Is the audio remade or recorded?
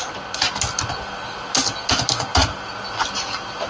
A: recorded